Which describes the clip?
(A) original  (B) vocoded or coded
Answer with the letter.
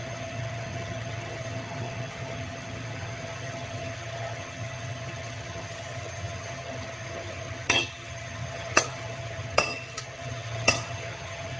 B